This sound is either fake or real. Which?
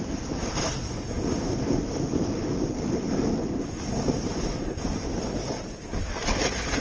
real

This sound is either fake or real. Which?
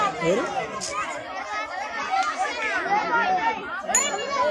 real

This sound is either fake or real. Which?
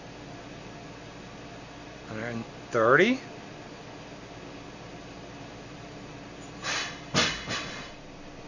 real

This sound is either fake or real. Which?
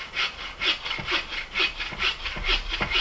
real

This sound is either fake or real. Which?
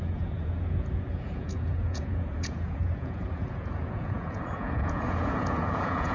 fake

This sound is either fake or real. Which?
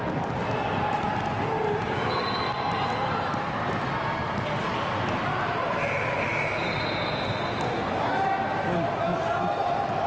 real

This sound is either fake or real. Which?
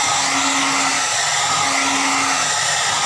real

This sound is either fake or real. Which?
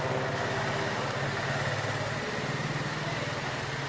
real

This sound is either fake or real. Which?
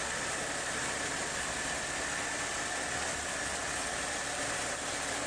real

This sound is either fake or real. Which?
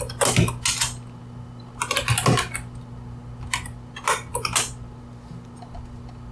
real